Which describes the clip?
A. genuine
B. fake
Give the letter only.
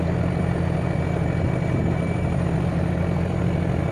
A